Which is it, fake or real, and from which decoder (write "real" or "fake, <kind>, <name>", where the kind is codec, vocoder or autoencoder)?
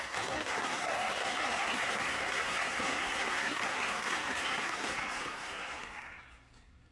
fake, codec, SNAC